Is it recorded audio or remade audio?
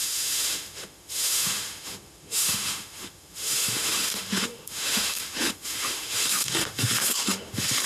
remade